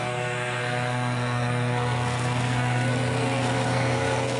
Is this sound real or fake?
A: fake